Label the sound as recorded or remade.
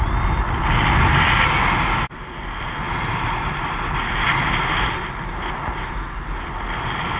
recorded